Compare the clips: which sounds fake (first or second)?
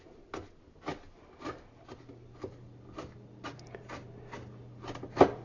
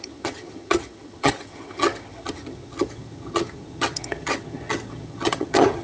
second